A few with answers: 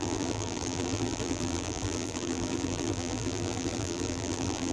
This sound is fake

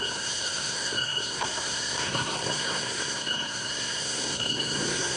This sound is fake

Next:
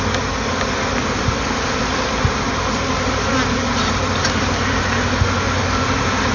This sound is real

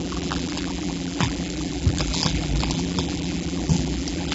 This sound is fake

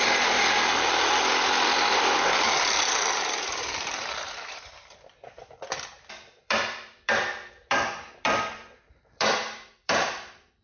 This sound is fake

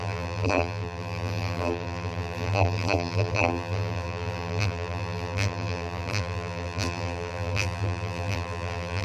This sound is fake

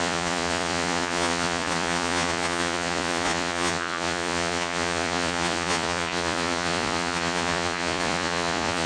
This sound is fake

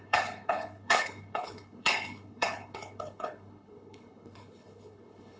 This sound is fake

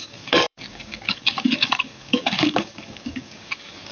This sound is fake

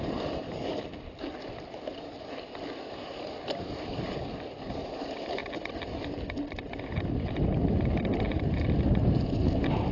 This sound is real